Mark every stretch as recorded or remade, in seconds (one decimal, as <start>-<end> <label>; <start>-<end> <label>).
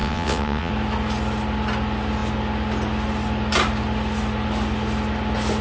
0.0-0.7 remade; 0.7-5.6 recorded